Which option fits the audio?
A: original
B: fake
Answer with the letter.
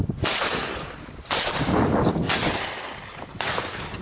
A